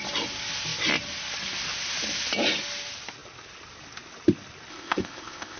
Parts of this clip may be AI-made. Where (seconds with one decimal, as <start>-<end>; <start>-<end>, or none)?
4.7-5.6

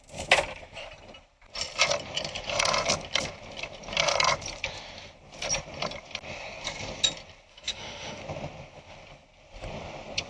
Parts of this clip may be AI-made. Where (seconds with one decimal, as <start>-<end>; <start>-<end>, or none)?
7.5-8.2